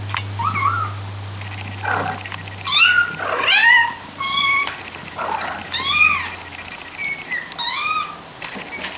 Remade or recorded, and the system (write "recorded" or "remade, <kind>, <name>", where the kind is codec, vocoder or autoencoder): recorded